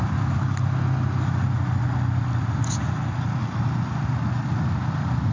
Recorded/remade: recorded